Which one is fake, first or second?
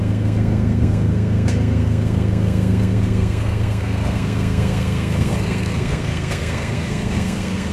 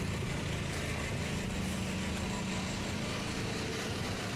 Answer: first